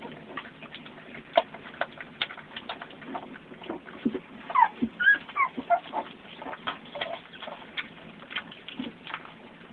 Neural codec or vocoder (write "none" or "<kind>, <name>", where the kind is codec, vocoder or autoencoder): none